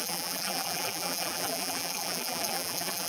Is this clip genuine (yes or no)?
no